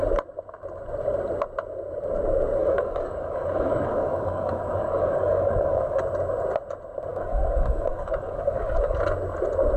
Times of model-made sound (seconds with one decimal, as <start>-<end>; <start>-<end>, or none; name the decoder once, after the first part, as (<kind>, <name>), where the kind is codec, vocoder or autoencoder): 2.6-6.0 (codec, DAC); 7.1-9.0

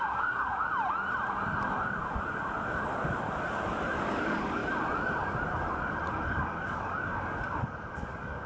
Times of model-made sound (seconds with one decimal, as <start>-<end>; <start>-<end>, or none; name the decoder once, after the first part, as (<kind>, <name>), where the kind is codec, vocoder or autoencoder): 0.0-0.7 (codec, DAC); 4.1-4.6; 6.3-8.5

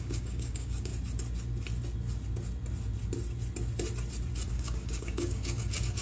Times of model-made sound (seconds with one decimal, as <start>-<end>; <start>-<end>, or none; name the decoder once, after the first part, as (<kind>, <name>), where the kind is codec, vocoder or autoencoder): 0.0-0.9 (codec, DAC); 4.5-6.0

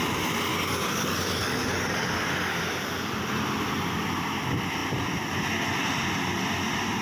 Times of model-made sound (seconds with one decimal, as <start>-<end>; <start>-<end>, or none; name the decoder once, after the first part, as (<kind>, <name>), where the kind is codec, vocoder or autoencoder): 0.5-2.6 (codec, DAC)

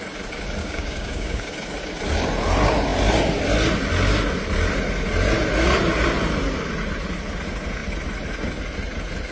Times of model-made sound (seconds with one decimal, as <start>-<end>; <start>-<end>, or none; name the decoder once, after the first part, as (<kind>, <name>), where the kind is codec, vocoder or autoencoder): 0.6-1.5 (codec, DAC)

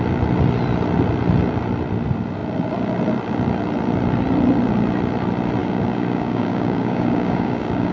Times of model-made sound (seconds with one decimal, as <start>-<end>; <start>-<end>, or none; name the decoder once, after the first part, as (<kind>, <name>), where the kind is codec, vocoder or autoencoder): 5.6-7.9 (codec, DAC)

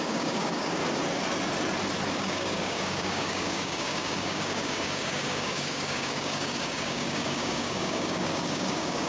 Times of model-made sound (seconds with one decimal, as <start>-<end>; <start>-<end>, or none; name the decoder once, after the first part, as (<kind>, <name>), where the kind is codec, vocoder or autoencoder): 0.0-0.8 (codec, DAC); 2.1-9.1